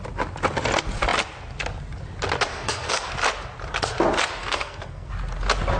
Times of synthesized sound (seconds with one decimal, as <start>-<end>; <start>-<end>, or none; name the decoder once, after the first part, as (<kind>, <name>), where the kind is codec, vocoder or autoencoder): 2.5-3.1 (codec, SNAC); 4.4-5.1